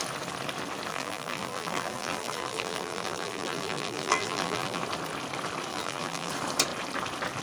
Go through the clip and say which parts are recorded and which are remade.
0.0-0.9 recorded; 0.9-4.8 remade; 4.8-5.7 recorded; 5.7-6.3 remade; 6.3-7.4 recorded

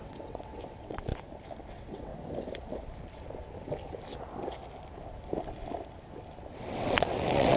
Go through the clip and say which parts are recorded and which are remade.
0.0-1.1 remade; 1.1-1.7 recorded; 1.7-2.1 remade; 2.1-6.5 recorded; 6.5-7.6 remade

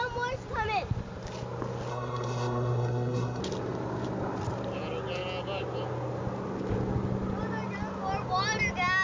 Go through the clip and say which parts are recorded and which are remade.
0.0-1.9 recorded; 1.9-3.4 remade; 3.4-9.0 recorded

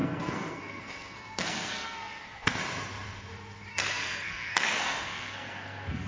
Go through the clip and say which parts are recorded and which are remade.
0.0-2.6 remade; 2.6-3.7 recorded; 3.7-6.1 remade

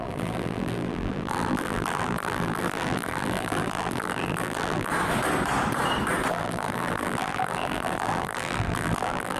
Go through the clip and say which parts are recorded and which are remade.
0.0-4.9 remade; 4.9-6.3 recorded; 6.3-9.4 remade

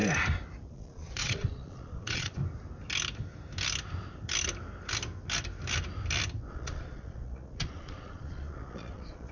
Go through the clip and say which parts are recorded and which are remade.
0.0-0.7 recorded; 0.7-2.4 remade; 2.4-6.5 recorded; 6.5-9.3 remade